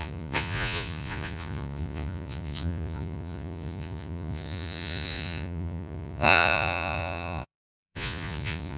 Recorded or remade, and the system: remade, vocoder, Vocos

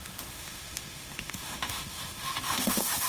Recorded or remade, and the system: remade, autoencoder, DAC-VAE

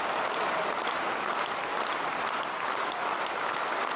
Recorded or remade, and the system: recorded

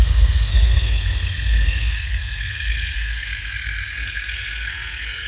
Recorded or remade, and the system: remade, codec, SNAC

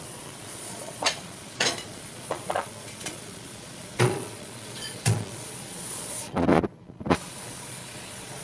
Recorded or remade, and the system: remade, vocoder, Vocos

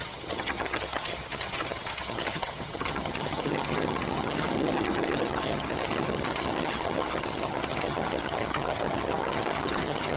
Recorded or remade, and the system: remade, vocoder, HiFi-GAN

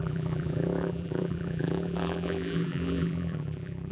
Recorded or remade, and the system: remade, vocoder, BigVGAN v2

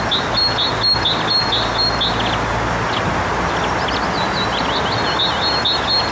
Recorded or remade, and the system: recorded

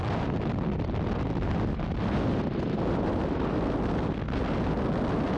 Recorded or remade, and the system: recorded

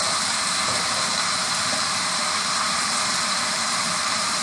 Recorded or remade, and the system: remade, vocoder, BigVGAN v2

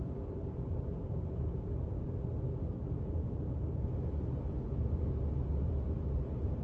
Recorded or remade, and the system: recorded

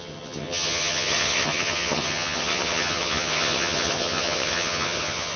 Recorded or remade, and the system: remade, vocoder, HiFi-GAN